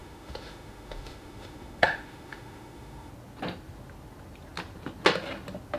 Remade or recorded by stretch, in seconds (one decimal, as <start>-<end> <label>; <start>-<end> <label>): 0.0-3.1 remade; 3.1-5.8 recorded